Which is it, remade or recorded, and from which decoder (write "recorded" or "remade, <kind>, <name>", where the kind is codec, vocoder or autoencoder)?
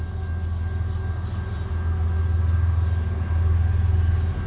recorded